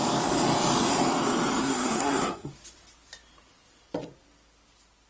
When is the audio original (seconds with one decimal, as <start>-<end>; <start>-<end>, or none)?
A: 0.0-1.6; 2.5-5.1